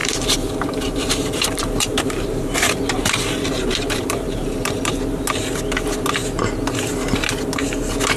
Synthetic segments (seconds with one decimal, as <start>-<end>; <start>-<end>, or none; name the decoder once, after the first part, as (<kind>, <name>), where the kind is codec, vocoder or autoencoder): 0.0-4.9 (vocoder, BigVGAN v2)